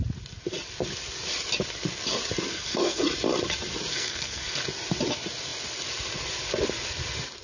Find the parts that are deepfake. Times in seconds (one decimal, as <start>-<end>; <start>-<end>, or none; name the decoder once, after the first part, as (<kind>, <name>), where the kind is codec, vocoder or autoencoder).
2.5-3.0 (codec, SNAC); 3.9-4.6